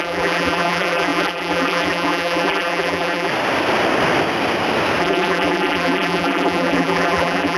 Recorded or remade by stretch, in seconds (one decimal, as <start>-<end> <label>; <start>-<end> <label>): 0.0-3.3 remade; 3.3-5.0 recorded; 5.0-7.6 remade